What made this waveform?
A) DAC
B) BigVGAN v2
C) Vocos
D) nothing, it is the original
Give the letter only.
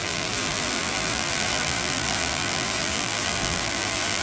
B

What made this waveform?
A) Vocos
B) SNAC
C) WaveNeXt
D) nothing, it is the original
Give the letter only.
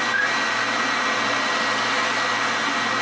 D